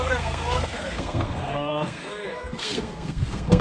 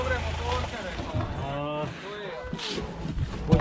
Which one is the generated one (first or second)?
first